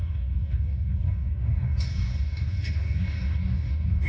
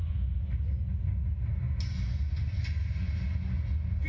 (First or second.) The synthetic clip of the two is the first